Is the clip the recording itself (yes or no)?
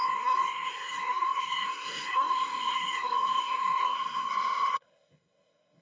no